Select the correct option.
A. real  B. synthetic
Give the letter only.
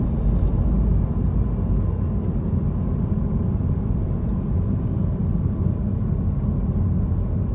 A